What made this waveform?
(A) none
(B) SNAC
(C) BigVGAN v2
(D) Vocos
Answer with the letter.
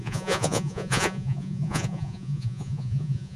D